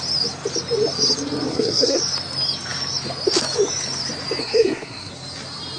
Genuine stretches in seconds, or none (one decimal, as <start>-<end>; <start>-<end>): 0.0-1.5; 2.0-4.4; 5.1-5.8